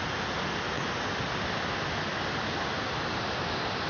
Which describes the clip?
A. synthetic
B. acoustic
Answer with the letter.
B